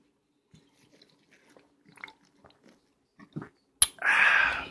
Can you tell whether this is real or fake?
real